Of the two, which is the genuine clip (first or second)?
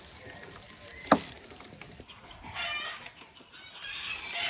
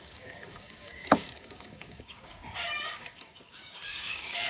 first